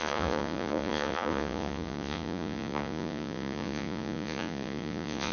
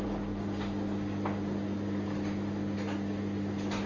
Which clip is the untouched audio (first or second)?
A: second